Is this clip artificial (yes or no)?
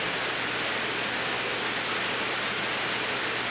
no